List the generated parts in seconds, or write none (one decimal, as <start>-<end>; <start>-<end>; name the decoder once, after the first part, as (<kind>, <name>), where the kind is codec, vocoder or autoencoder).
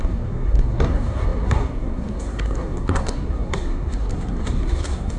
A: 0.0-5.2 (codec, SNAC)